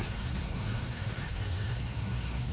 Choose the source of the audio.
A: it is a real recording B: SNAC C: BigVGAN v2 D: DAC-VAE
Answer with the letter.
B